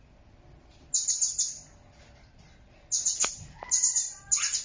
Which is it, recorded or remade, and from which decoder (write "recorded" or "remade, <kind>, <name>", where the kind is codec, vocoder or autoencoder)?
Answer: recorded